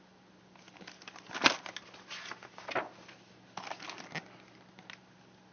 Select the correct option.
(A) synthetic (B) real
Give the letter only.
B